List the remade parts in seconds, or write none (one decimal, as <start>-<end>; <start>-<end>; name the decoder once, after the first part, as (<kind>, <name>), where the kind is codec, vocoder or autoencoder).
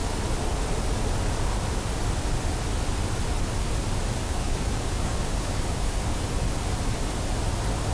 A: 4.2-6.2 (codec, DAC)